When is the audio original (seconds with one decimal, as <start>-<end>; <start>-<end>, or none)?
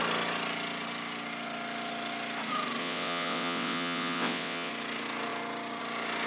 0.0-2.8; 4.7-6.3